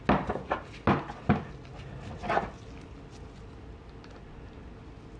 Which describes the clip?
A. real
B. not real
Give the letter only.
A